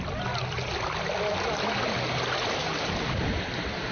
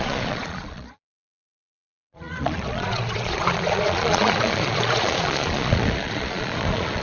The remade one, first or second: second